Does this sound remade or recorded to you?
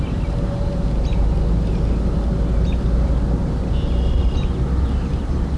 recorded